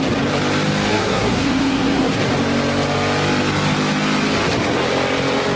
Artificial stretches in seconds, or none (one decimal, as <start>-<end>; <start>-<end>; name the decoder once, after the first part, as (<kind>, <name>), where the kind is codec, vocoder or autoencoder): 0.9-2.2 (codec, SNAC)